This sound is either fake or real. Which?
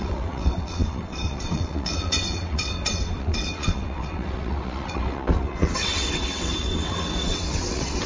fake